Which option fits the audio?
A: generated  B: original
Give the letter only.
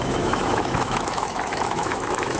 A